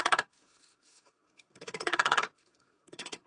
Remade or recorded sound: remade